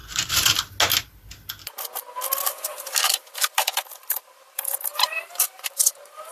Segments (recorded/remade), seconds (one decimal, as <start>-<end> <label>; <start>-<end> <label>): 0.0-0.7 remade; 0.7-2.7 recorded; 2.7-6.3 remade